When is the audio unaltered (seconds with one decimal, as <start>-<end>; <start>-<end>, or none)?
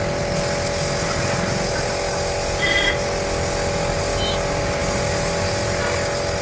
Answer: 0.0-6.4